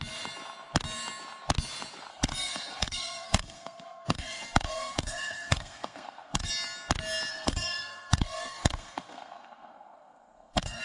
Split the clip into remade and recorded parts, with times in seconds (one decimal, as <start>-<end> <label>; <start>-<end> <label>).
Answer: 0.0-2.1 recorded; 2.1-6.5 remade; 6.5-7.3 recorded; 7.3-10.8 remade

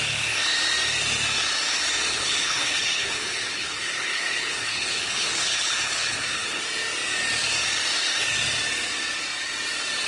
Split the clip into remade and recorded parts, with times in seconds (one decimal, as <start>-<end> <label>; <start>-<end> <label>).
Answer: 0.0-2.1 recorded; 2.1-6.6 remade; 6.6-10.1 recorded

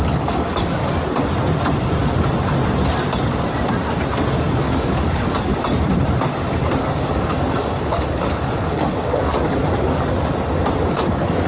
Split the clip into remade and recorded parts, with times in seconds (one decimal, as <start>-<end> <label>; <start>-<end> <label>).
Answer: 0.0-0.8 remade; 0.8-4.4 recorded; 4.4-5.5 remade; 5.5-6.8 recorded; 6.8-9.6 remade; 9.6-10.9 recorded; 10.9-11.5 remade

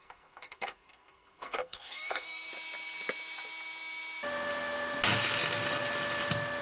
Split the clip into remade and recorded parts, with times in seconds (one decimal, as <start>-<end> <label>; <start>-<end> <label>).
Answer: 0.0-2.5 remade; 2.5-6.6 recorded

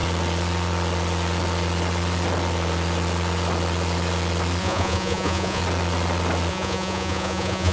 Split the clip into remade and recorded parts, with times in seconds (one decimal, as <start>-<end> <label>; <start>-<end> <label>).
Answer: 0.0-4.6 recorded; 4.6-5.6 remade; 5.6-6.5 recorded; 6.5-7.7 remade